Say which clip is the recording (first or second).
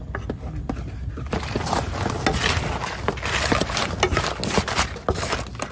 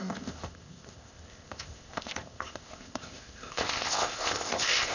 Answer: first